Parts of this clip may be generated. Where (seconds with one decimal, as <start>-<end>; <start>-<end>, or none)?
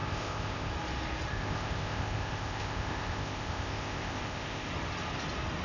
0.0-0.7; 1.3-4.7